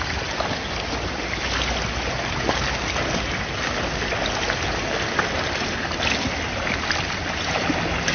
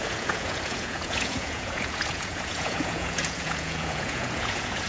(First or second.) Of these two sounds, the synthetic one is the second